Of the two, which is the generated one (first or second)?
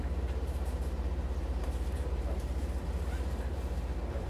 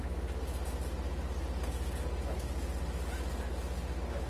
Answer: first